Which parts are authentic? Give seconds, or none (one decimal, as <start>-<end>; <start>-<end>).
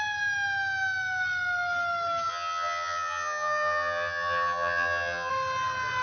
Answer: 0.0-2.3; 5.3-6.0